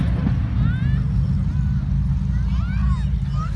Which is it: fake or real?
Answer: real